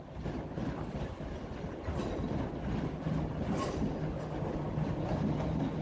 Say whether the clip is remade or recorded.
recorded